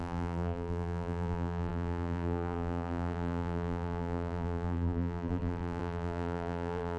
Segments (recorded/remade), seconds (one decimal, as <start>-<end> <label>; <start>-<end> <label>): 0.0-7.0 remade